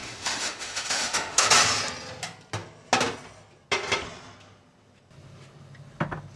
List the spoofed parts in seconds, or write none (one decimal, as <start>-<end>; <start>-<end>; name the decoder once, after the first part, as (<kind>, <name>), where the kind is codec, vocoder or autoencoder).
0.0-1.5 (autoencoder, DAC-VAE)